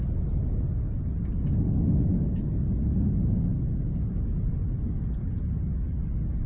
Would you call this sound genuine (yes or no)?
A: yes